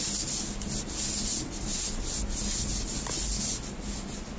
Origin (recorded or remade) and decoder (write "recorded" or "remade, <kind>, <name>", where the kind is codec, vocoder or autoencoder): recorded